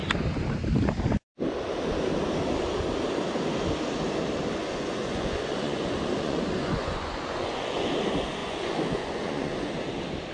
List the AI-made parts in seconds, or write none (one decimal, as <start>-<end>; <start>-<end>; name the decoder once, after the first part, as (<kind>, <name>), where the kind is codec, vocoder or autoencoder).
4.6-7.9 (vocoder, Vocos); 8.4-9.7